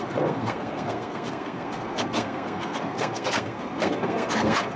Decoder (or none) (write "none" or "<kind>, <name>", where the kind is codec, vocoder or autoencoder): codec, SNAC